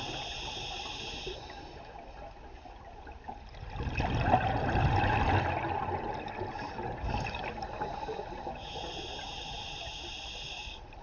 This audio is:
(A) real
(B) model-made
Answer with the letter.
A